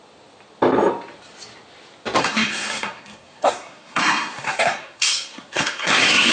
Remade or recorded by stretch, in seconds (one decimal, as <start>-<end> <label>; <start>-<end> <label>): 0.0-2.2 recorded; 2.2-6.3 remade